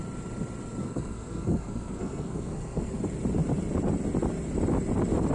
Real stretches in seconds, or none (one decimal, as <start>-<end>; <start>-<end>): 0.0-0.8; 3.0-5.3